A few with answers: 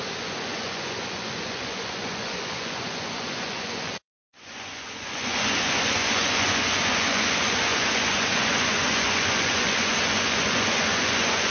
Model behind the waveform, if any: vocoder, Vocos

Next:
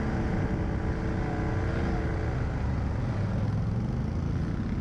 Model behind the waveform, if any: none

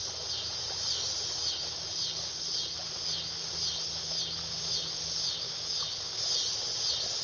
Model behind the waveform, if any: none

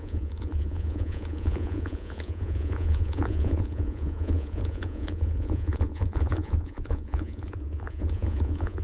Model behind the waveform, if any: vocoder, Vocos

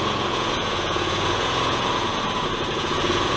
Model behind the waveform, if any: vocoder, Vocos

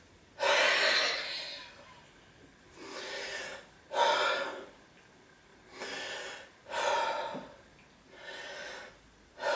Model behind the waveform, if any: none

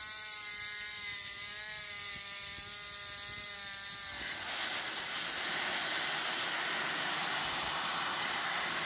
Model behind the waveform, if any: none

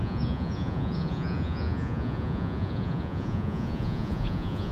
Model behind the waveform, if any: vocoder, Vocos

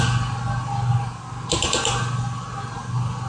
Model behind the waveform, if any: none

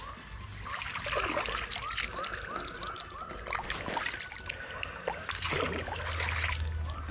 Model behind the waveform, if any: none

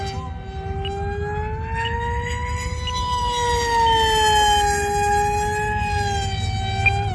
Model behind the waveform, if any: none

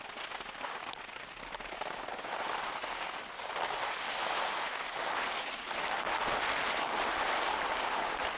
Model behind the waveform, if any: none